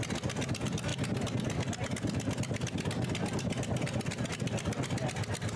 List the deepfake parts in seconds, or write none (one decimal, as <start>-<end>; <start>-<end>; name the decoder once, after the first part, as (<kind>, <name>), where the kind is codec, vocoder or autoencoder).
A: none